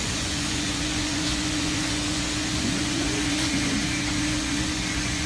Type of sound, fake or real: fake